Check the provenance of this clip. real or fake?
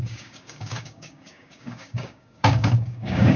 fake